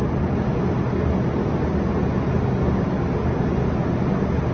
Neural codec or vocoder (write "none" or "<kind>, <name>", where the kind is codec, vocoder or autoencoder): none